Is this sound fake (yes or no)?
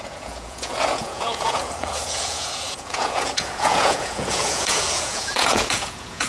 yes